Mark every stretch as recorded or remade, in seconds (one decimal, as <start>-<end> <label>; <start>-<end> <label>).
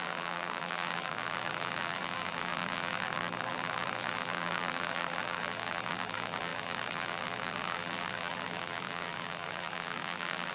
0.0-10.5 remade